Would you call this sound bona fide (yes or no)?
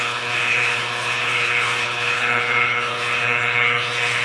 no